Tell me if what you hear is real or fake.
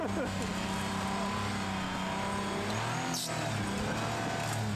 real